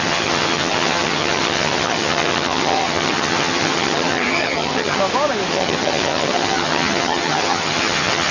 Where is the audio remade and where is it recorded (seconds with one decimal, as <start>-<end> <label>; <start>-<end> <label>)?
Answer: 0.0-5.0 remade; 5.0-5.5 recorded; 5.5-8.3 remade